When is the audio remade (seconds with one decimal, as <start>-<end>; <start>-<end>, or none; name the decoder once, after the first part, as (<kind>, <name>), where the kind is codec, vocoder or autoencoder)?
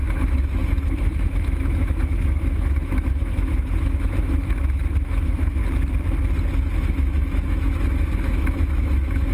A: 0.0-5.6 (autoencoder, DAC-VAE); 6.8-9.3